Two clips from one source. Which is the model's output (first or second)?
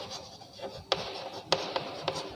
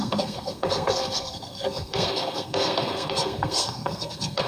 second